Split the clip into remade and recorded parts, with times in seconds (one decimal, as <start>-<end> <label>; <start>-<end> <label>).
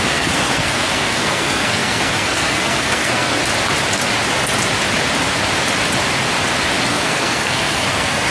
0.0-3.4 remade; 3.4-6.9 recorded; 6.9-8.3 remade